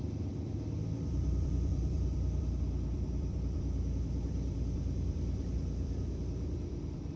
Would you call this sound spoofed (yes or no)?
yes